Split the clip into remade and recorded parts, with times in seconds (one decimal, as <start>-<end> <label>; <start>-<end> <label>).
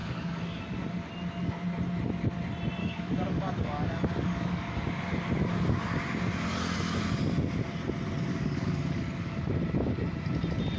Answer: 0.0-0.6 remade; 0.6-2.8 recorded; 2.8-4.9 remade; 4.9-8.3 recorded; 8.3-9.4 remade; 9.4-10.8 recorded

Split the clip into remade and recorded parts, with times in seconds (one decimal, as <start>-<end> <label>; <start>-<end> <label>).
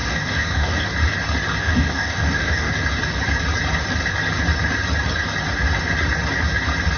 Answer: 0.0-0.8 remade; 0.8-1.6 recorded; 1.6-2.7 remade; 2.7-7.0 recorded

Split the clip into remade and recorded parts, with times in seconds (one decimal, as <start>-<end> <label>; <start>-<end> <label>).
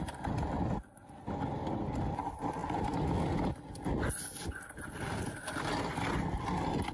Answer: 0.0-6.9 recorded